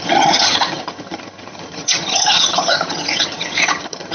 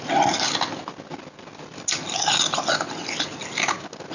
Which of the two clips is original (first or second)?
second